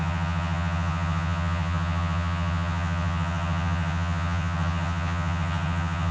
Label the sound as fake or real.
fake